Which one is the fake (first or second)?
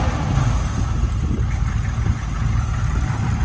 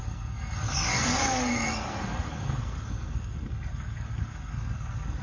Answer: second